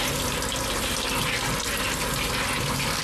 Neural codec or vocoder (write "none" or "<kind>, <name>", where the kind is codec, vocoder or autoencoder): none